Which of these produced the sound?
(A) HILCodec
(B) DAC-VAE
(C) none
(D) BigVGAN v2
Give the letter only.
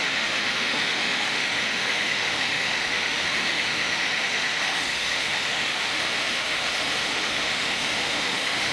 B